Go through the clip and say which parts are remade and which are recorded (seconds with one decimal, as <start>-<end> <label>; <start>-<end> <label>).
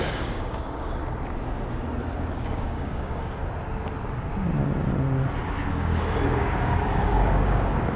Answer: 0.0-1.0 remade; 1.0-2.3 recorded; 2.3-3.4 remade; 3.4-5.7 recorded; 5.7-8.0 remade